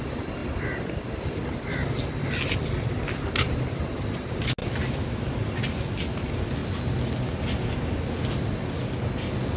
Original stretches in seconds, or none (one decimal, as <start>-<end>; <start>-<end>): 0.0-9.6